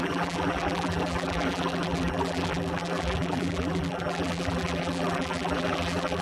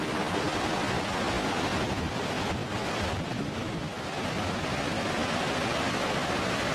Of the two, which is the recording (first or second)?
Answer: second